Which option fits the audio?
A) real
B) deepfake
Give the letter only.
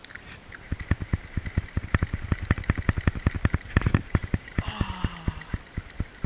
A